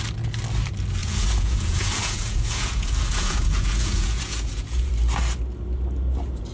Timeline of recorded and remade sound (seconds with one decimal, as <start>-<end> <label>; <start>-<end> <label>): 0.0-1.0 recorded; 1.0-4.9 remade; 4.9-6.5 recorded